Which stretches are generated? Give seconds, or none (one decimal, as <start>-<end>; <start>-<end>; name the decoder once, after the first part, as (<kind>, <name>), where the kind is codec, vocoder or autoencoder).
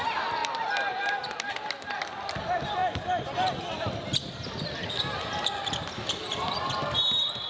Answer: 0.0-2.8 (vocoder, BigVGAN v2); 5.6-7.5